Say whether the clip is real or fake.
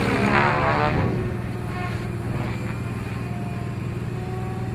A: real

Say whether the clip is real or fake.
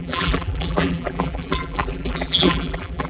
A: fake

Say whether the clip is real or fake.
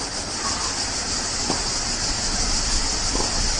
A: real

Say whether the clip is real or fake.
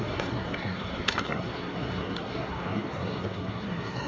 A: fake